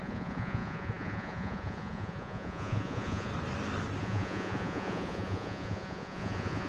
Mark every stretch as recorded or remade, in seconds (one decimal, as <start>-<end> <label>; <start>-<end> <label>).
0.0-3.3 remade; 3.3-4.0 recorded; 4.0-6.7 remade